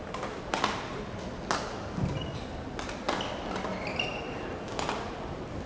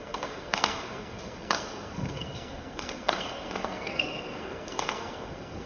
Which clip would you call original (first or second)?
first